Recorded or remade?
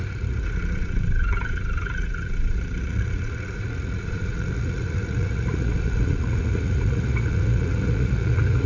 remade